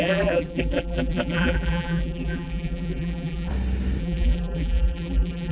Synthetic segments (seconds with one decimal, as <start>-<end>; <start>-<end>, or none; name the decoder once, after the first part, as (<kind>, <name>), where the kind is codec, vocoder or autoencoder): 0.0-3.5 (vocoder, BigVGAN v2); 4.0-5.5